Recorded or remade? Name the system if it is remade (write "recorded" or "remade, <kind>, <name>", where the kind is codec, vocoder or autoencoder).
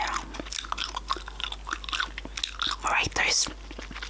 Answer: recorded